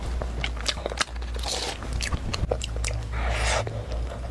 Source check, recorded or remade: recorded